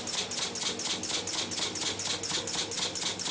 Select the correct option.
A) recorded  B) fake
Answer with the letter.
A